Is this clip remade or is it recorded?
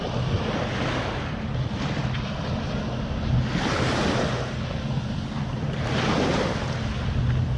recorded